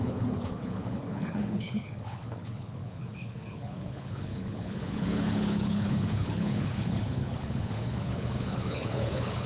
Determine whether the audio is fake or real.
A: fake